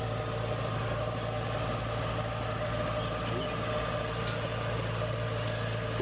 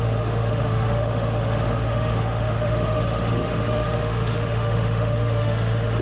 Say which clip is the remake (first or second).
second